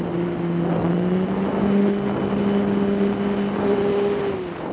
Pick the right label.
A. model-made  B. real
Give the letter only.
B